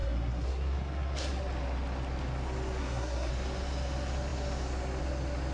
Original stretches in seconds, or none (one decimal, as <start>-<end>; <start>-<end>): 1.4-2.8; 3.3-5.5